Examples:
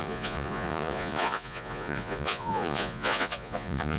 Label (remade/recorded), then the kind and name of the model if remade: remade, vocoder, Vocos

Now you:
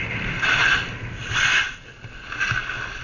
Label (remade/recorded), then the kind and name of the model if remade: recorded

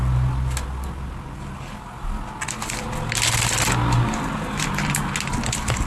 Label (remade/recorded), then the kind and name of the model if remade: recorded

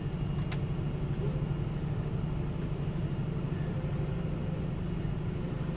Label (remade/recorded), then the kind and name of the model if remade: recorded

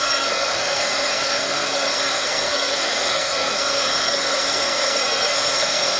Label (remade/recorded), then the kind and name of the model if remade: remade, codec, SNAC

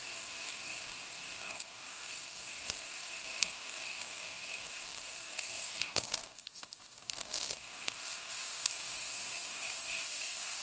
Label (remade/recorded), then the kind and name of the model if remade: remade, codec, DAC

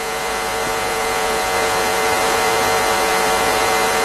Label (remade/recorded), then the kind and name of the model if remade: remade, vocoder, Vocos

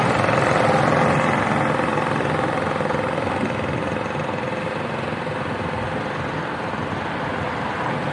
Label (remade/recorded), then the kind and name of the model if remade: recorded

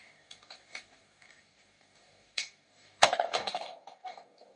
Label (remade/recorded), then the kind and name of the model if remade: remade, codec, DAC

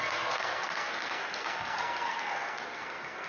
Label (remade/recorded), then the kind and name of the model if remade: remade, codec, SNAC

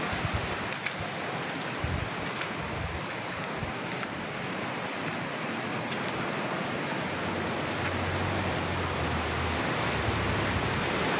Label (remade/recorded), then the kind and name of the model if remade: recorded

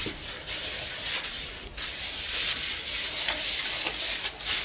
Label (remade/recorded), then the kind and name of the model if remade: recorded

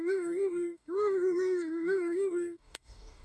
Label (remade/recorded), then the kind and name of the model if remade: remade, codec, DAC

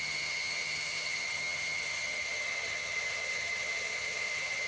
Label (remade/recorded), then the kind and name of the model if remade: remade, vocoder, HiFi-GAN